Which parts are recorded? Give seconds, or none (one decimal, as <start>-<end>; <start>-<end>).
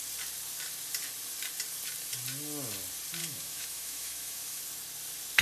0.0-3.2; 4.6-5.4